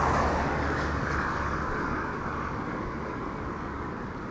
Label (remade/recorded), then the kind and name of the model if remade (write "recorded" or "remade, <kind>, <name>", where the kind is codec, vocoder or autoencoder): remade, codec, DAC